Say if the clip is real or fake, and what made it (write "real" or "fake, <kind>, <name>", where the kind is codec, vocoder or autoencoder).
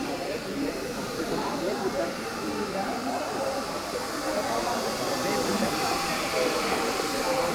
fake, vocoder, BigVGAN v2